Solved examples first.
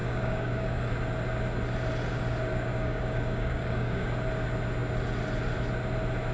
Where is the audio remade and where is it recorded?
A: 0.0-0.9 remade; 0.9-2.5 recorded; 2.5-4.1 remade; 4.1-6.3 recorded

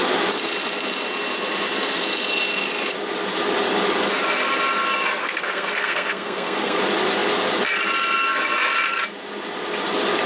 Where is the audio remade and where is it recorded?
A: 0.0-5.2 recorded; 5.2-6.8 remade; 6.8-10.3 recorded

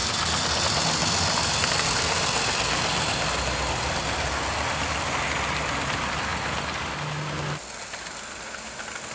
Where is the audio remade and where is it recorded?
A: 0.0-9.1 recorded

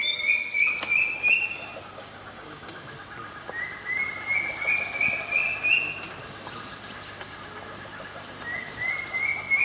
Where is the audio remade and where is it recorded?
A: 0.0-1.8 recorded; 1.8-2.9 remade; 2.9-9.6 recorded

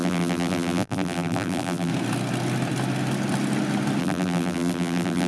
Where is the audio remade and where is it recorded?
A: 0.0-1.9 remade; 1.9-4.0 recorded; 4.0-5.3 remade